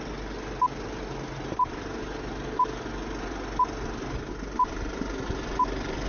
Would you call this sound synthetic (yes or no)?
no